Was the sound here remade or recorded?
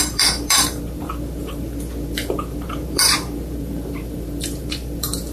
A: remade